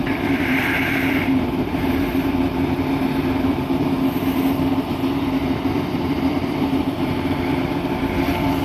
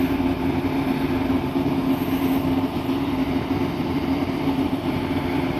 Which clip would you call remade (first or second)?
first